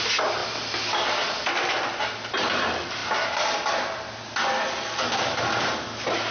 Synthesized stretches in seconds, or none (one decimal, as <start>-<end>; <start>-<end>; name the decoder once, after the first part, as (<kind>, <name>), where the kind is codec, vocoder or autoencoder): 3.0-5.4 (vocoder, BigVGAN v2)